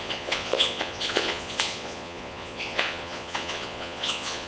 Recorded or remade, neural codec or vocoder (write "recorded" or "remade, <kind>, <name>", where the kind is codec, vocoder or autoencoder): remade, vocoder, Vocos